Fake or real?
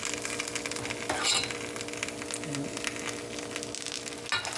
real